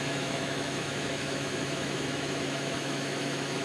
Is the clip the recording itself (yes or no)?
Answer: no